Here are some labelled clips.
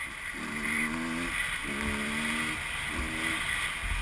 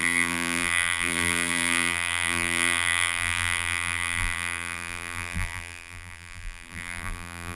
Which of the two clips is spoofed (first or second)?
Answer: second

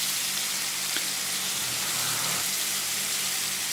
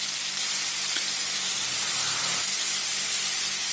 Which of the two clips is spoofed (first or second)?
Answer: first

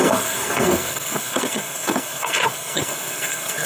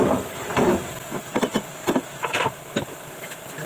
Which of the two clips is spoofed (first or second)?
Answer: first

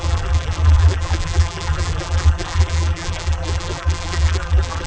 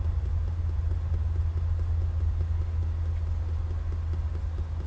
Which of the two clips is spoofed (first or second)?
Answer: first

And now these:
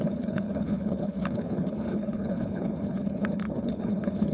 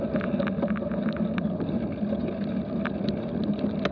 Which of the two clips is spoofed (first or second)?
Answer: first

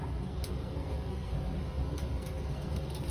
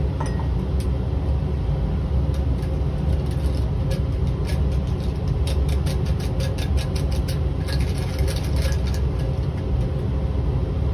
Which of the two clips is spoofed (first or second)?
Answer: first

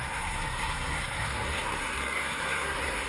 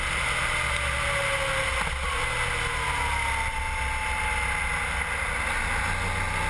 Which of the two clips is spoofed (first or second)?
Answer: first